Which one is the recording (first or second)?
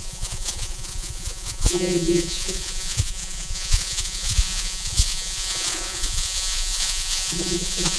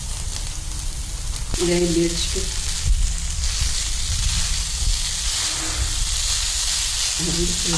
second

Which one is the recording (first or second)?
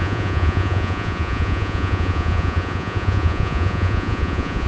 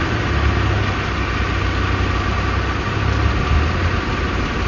second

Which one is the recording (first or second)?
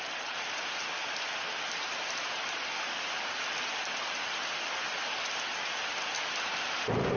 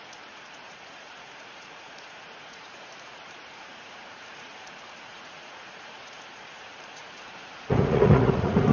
first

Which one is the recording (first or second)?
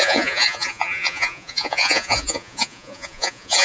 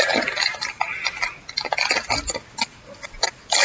second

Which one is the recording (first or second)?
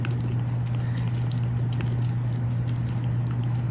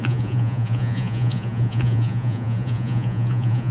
first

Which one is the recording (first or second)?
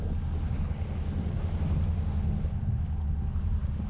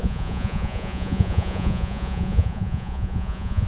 first